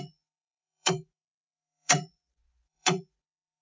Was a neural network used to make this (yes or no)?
yes